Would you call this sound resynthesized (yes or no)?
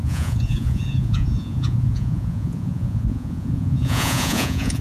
yes